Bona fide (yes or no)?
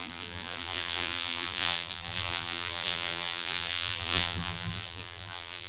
no